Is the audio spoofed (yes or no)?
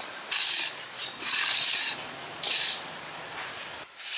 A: no